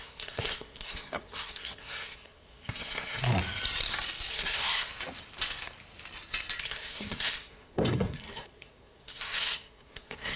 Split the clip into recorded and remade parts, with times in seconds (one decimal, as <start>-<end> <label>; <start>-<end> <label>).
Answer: 0.0-3.2 remade; 3.2-4.3 recorded; 4.3-4.9 remade; 4.9-6.6 recorded; 6.6-10.4 remade